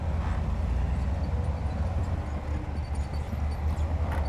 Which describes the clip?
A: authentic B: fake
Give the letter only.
A